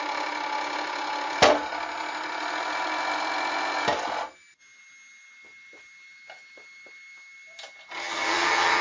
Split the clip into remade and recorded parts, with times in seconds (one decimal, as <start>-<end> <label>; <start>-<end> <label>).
0.0-8.0 recorded; 8.0-8.8 remade